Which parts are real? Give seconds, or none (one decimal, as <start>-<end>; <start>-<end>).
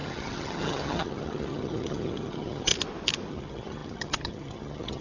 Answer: 2.7-3.3